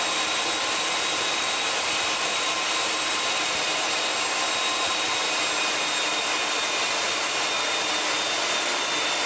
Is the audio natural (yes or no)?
yes